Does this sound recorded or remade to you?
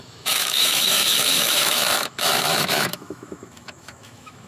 remade